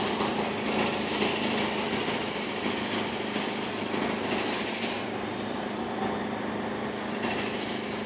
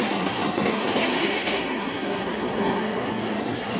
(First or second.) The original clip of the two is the first